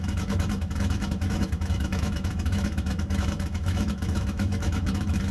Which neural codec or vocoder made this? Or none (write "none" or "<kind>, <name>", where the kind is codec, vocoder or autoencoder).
autoencoder, DAC-VAE